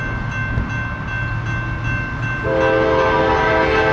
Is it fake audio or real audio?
real